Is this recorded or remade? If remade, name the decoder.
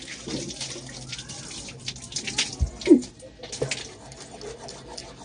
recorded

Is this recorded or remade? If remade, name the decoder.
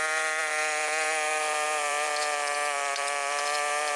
remade, vocoder, BigVGAN v2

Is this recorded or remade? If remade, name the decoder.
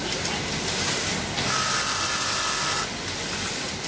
recorded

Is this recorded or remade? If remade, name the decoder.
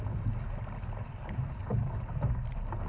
recorded